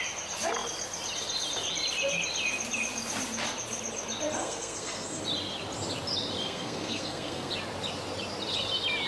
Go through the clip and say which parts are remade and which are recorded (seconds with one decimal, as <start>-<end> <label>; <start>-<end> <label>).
0.0-4.4 recorded; 4.4-5.2 remade; 5.2-6.4 recorded; 6.4-7.5 remade; 7.5-9.1 recorded